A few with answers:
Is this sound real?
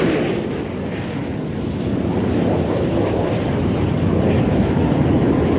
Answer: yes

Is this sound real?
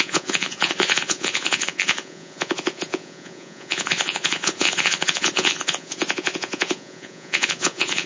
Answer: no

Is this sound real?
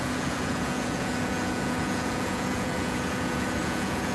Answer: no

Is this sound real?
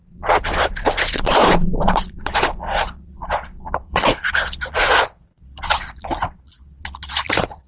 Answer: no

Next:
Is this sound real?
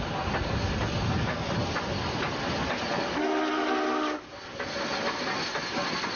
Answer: yes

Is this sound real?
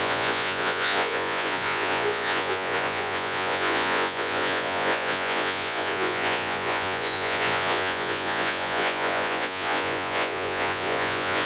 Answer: no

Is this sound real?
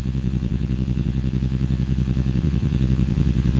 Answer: no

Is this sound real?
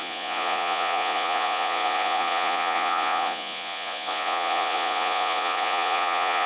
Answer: no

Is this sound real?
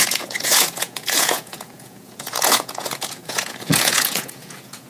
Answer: no